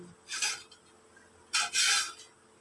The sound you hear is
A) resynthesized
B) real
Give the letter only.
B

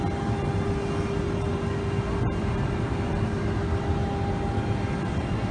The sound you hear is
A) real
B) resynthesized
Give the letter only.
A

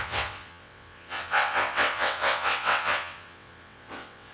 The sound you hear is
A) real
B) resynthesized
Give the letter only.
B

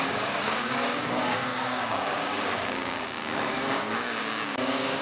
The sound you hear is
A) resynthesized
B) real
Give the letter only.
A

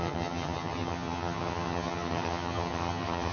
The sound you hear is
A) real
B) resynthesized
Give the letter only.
B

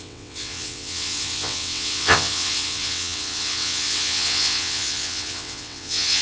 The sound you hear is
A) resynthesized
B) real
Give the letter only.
A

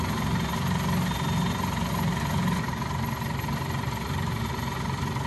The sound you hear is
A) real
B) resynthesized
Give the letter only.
A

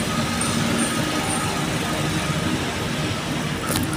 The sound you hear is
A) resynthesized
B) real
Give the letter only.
B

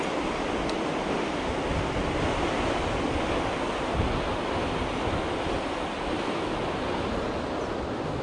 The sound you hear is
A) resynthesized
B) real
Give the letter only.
B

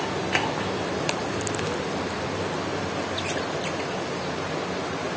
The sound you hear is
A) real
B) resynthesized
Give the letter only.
A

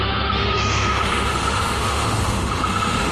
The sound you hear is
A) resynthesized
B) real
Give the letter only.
A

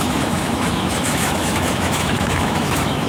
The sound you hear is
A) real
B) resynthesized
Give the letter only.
B